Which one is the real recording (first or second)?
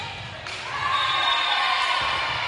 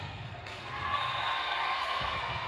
first